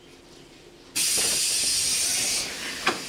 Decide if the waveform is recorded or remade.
recorded